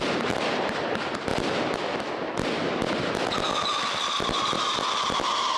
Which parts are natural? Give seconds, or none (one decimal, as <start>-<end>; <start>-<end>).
1.3-4.7